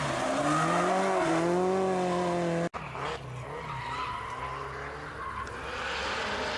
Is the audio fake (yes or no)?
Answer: no